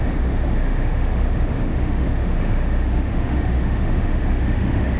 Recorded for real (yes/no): no